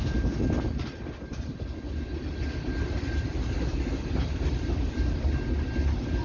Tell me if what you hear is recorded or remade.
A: recorded